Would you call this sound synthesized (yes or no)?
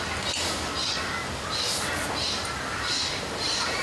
yes